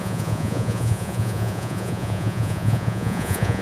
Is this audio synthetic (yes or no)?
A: yes